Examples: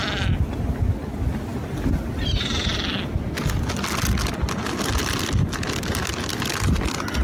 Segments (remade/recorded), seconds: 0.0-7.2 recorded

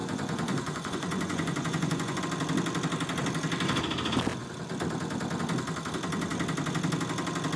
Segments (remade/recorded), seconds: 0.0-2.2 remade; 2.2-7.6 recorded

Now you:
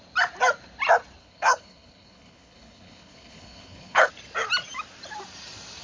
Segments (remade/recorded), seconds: 0.0-1.2 recorded; 1.2-4.1 remade; 4.1-5.8 recorded

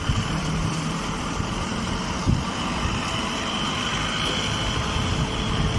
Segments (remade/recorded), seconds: 0.0-1.7 remade; 1.7-3.5 recorded; 3.5-3.9 remade; 3.9-4.9 recorded; 4.9-5.8 remade